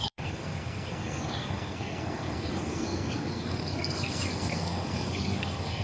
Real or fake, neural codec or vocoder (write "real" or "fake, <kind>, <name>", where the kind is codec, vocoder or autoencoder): fake, codec, SNAC